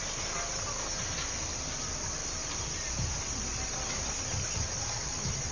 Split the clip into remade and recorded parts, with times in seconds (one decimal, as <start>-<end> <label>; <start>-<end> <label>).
0.0-5.5 recorded